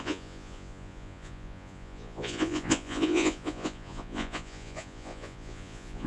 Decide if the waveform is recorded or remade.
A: remade